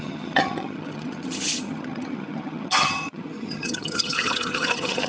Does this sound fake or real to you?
fake